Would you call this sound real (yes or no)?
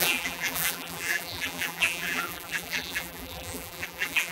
no